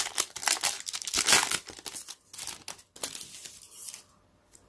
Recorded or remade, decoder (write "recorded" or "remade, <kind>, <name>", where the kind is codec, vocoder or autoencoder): recorded